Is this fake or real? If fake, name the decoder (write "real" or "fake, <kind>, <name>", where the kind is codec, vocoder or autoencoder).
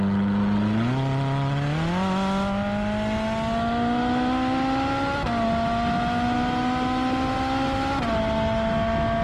real